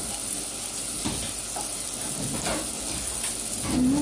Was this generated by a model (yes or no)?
no